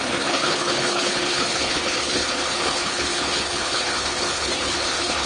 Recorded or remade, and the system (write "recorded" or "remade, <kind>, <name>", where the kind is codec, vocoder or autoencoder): remade, codec, HILCodec